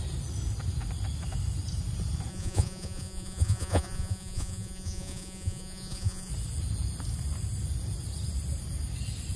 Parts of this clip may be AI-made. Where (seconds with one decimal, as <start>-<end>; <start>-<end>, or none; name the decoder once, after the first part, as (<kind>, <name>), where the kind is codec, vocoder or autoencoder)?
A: 2.3-6.3 (vocoder, Vocos)